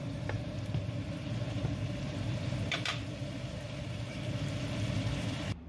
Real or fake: fake